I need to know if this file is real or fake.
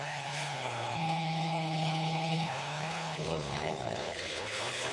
fake